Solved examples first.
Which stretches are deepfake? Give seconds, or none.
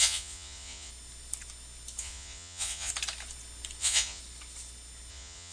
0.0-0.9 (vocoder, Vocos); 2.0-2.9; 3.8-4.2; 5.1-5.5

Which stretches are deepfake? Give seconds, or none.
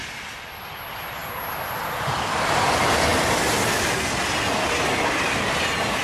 none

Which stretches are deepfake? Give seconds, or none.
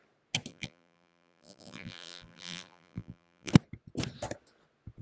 0.5-3.5 (vocoder, BigVGAN v2)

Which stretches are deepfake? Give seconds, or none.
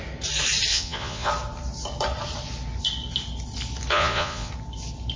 0.7-1.3 (vocoder, Vocos); 3.9-4.5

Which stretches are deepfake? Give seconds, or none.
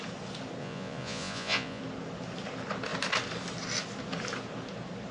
0.6-1.8 (vocoder, Vocos)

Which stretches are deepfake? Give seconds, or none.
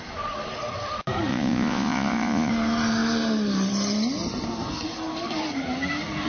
1.3-2.5 (vocoder, Vocos)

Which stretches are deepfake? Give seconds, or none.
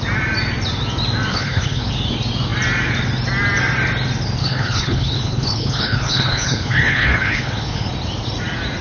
1.3-1.9 (codec, HILCodec); 4.4-7.9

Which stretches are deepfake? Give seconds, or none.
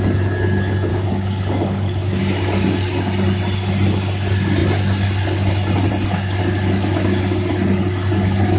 0.9-2.2 (codec, DAC)